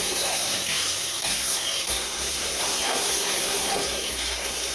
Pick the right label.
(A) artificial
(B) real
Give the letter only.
A